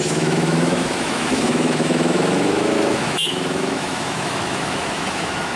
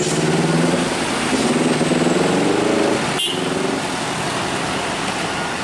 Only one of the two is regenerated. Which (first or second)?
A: first